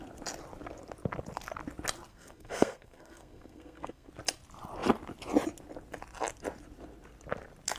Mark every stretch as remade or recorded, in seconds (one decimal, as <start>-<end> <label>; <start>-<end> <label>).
0.0-2.1 recorded; 2.1-4.1 remade; 4.1-7.8 recorded